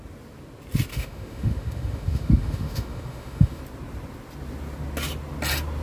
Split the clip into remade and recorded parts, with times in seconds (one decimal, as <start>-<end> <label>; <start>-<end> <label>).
0.0-0.9 recorded; 0.9-3.6 remade; 3.6-5.8 recorded